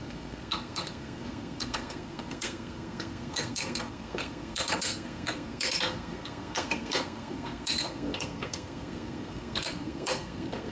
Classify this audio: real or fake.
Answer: fake